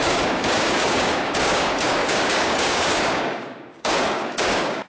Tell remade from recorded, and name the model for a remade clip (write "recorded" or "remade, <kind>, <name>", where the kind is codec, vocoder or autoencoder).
remade, codec, DAC